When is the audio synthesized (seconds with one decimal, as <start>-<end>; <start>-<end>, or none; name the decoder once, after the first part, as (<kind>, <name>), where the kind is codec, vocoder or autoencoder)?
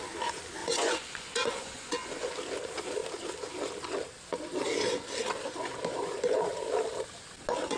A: 0.6-2.3 (vocoder, Vocos)